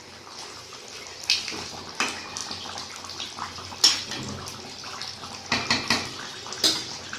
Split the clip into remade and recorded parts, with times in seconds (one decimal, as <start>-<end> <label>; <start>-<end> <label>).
0.0-7.2 recorded